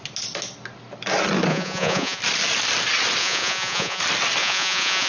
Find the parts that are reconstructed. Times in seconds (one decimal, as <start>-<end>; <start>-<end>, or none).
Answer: 1.5-2.2; 3.2-4.0; 4.4-5.1